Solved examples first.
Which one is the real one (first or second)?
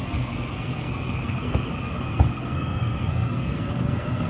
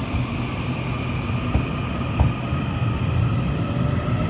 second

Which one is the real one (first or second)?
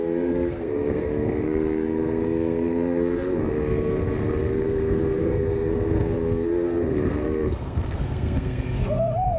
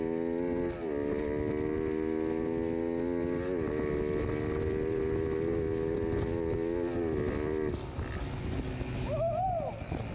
second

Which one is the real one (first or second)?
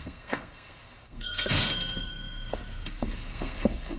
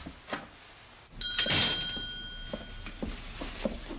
second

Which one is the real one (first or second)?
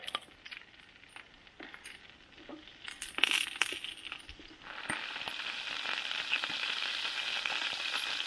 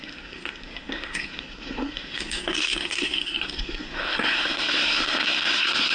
first